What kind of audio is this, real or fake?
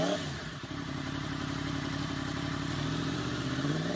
fake